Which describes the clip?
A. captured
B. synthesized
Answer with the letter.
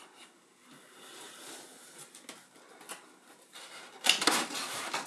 A